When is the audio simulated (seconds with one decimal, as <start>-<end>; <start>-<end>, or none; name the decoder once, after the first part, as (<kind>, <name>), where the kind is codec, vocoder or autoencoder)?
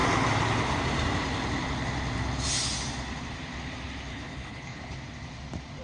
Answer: 4.1-4.8 (codec, HILCodec)